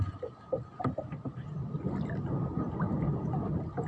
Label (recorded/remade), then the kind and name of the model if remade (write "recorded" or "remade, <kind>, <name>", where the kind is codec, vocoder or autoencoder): recorded